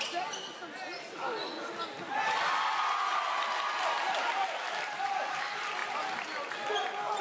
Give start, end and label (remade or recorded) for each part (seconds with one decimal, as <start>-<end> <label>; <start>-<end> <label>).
0.0-7.2 recorded